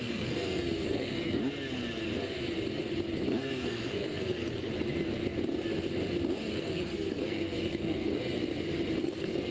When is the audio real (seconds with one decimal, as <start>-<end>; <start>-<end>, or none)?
1.4-3.3; 4.7-6.5; 8.1-9.0